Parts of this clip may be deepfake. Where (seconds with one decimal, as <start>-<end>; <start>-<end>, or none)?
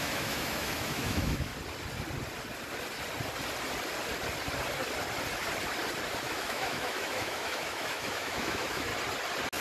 0.0-1.5; 6.2-8.9